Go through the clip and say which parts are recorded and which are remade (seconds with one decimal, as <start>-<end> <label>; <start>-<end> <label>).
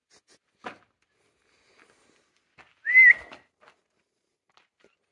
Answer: 0.0-5.1 recorded